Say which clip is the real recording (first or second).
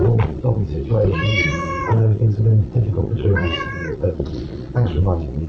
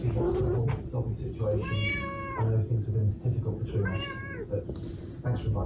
second